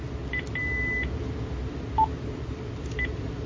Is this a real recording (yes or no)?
yes